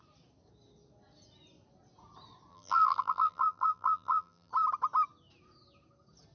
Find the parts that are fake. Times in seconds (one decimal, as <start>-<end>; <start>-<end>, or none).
2.5-4.5